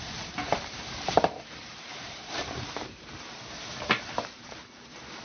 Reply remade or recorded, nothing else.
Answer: remade